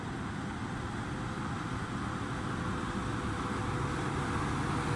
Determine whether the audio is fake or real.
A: real